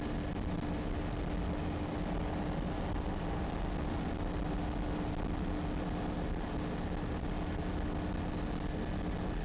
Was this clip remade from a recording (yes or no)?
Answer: no